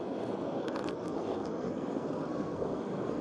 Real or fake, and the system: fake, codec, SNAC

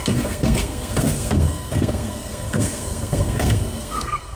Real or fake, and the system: fake, codec, SNAC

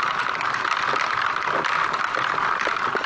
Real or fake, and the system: real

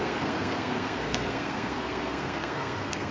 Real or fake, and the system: fake, codec, SNAC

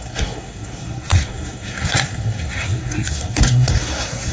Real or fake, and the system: fake, codec, SNAC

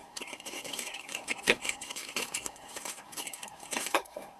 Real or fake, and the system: fake, codec, SNAC